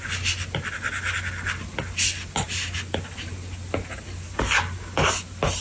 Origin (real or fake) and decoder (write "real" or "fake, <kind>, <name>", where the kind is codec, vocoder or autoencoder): real